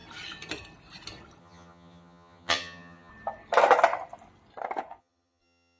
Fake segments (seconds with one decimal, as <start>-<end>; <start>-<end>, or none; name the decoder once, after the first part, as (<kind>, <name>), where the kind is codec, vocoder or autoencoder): 1.4-3.1 (vocoder, HiFi-GAN); 5.0-5.8